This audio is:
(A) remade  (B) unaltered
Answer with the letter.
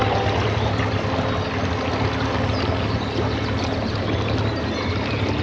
B